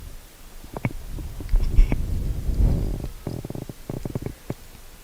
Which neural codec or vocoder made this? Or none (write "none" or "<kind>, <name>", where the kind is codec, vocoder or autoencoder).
none